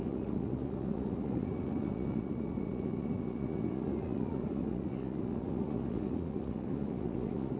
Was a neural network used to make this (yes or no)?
yes